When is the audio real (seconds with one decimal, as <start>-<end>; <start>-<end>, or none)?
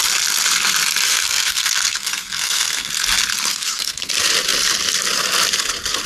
0.0-1.1; 2.9-3.5; 4.1-6.1